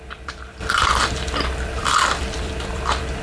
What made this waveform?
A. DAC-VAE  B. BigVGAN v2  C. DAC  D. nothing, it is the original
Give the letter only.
B